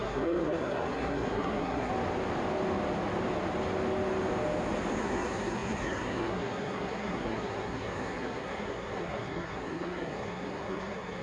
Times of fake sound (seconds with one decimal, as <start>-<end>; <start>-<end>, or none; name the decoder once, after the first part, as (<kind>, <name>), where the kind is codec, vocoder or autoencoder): 0.0-1.9 (codec, SNAC); 5.0-11.2